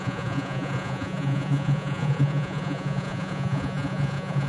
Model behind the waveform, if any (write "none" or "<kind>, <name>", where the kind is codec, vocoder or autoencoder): vocoder, Vocos